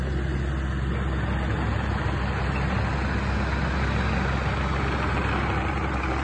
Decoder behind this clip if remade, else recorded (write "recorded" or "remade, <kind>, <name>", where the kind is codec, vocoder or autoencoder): recorded